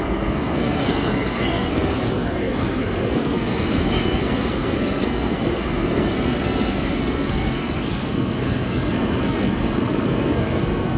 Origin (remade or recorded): remade